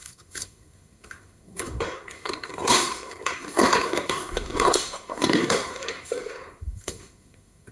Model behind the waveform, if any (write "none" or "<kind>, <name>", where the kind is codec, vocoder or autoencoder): codec, SNAC